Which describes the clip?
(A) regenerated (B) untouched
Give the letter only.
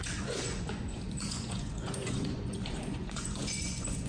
A